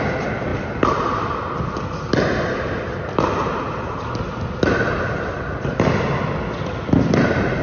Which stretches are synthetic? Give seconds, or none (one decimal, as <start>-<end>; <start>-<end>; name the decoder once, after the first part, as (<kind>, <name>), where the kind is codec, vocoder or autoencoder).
none